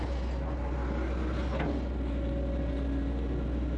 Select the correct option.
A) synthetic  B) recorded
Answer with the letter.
B